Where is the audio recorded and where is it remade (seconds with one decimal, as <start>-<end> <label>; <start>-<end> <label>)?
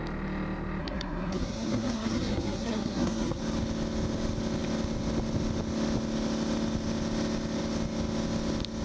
0.0-0.8 recorded; 0.8-3.4 remade; 3.4-8.8 recorded